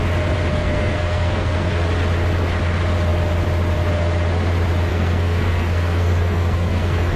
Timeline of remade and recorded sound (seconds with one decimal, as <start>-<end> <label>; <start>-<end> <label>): 0.0-0.5 recorded; 0.5-1.7 remade; 1.7-4.9 recorded; 4.9-7.2 remade